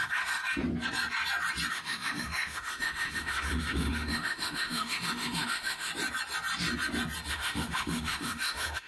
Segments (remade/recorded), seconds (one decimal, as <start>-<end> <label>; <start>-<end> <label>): 0.0-0.4 remade; 0.4-1.7 recorded; 1.7-5.9 remade; 5.9-7.3 recorded; 7.3-8.9 remade